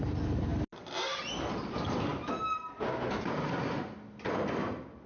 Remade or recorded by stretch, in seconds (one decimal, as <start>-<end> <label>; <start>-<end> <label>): 0.0-5.1 recorded